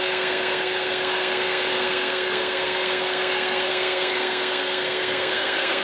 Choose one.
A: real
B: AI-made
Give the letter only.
B